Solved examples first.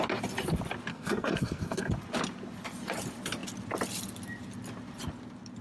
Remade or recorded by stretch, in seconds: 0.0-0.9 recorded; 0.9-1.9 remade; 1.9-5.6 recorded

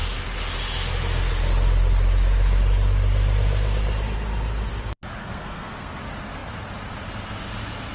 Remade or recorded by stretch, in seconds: 0.0-5.2 recorded; 5.2-6.0 remade; 6.0-7.9 recorded

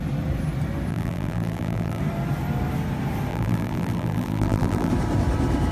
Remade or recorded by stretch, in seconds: 0.0-0.9 recorded; 0.9-2.0 remade; 2.0-3.3 recorded; 3.3-4.9 remade; 4.9-5.7 recorded

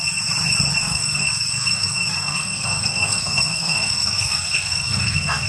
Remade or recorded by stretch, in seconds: 0.0-0.8 recorded; 0.8-5.5 remade

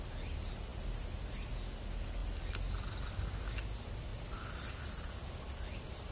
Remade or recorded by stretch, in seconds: 0.0-0.7 recorded; 0.7-1.5 remade; 1.5-2.2 recorded; 2.2-3.1 remade; 3.1-6.1 recorded

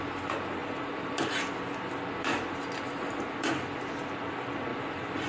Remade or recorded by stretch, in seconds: 0.0-5.3 recorded

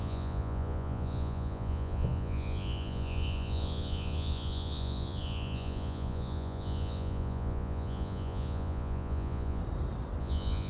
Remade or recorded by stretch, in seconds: 0.0-9.6 remade; 9.6-10.2 recorded; 10.2-10.7 remade